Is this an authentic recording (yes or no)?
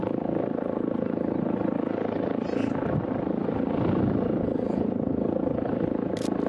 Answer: yes